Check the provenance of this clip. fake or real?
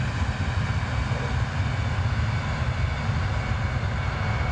real